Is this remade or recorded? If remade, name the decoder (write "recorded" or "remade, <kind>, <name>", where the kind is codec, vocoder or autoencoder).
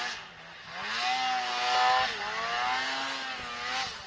recorded